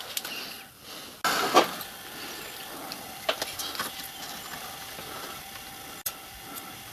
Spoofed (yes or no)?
no